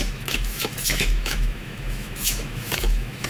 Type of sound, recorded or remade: remade